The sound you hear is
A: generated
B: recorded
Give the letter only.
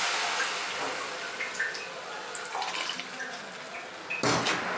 B